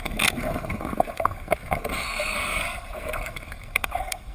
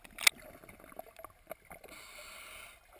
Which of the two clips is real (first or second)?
second